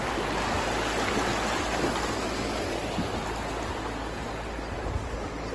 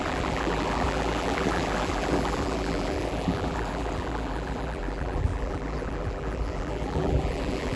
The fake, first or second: second